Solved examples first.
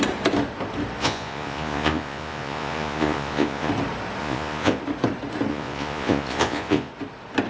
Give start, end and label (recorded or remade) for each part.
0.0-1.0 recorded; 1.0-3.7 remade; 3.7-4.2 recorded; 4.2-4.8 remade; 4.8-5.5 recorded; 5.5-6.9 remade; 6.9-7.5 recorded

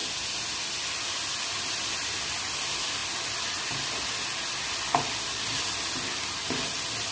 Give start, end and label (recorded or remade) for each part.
0.0-7.1 recorded